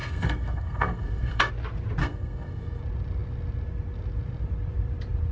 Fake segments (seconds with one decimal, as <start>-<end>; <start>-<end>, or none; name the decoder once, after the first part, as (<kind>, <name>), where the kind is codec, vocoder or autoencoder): 0.0-1.5 (codec, SNAC); 2.0-2.8